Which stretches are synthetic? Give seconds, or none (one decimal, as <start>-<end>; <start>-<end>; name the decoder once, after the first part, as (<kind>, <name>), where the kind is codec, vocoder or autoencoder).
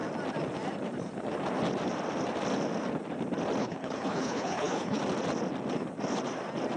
3.6-5.0 (codec, HILCodec)